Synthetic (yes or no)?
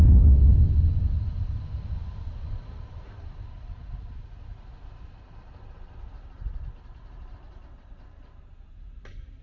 no